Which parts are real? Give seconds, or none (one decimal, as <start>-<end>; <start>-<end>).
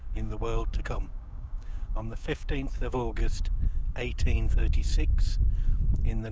3.2-4.5; 4.9-6.3